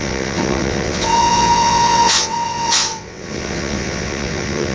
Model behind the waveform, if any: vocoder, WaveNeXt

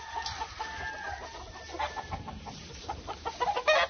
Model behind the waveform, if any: none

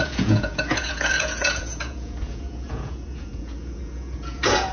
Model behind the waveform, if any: vocoder, Vocos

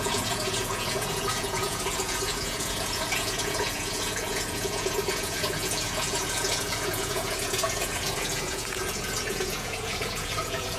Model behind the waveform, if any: vocoder, Vocos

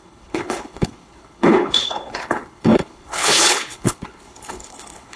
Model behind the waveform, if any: codec, HILCodec